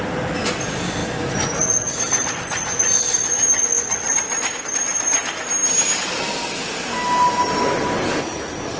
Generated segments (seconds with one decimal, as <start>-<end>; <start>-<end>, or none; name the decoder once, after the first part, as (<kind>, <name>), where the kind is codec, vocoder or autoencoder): none